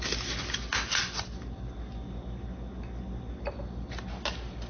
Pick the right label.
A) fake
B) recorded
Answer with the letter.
B